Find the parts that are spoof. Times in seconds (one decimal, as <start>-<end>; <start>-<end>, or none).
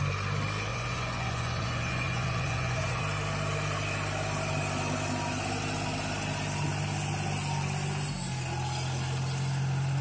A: 0.7-3.0